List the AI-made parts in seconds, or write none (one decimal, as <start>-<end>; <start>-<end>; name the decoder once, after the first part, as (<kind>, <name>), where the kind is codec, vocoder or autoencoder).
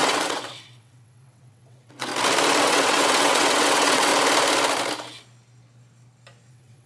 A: 0.0-2.1 (vocoder, WaveNeXt); 2.6-4.1; 6.5-6.9